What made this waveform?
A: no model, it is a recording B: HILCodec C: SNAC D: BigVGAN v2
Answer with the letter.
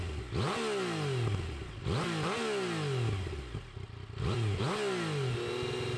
A